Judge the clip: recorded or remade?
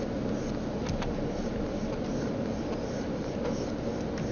recorded